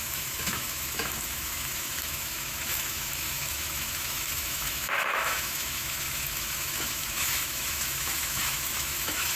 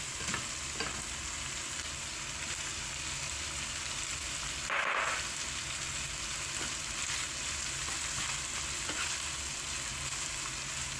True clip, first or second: second